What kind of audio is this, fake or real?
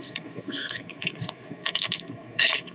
fake